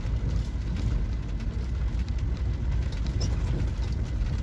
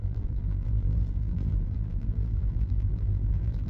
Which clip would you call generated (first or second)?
second